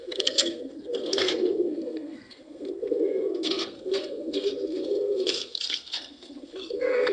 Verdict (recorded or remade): remade